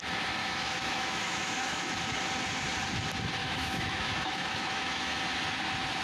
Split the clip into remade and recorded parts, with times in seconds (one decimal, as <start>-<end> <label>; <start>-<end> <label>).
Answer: 0.0-0.4 recorded; 0.4-1.9 remade; 1.9-3.4 recorded; 3.4-5.2 remade; 5.2-6.0 recorded